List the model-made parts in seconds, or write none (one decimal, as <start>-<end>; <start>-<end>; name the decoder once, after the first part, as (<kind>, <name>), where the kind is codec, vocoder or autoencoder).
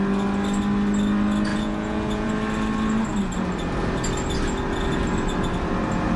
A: 1.5-2.3 (vocoder, Vocos)